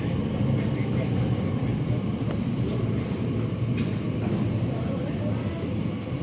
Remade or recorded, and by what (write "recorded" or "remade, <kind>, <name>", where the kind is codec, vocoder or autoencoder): recorded